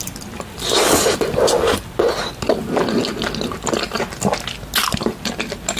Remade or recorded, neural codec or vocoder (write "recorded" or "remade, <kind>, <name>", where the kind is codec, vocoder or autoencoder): recorded